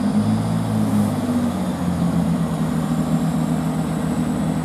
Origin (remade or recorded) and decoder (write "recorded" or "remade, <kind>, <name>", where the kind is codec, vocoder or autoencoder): recorded